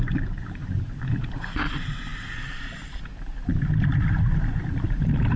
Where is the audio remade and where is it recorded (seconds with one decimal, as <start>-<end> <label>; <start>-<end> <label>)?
0.0-5.4 recorded